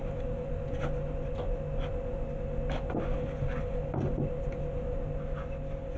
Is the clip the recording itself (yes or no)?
yes